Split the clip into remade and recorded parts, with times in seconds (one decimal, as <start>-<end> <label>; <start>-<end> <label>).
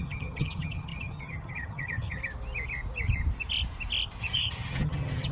0.0-2.2 remade; 2.2-4.2 recorded; 4.2-5.3 remade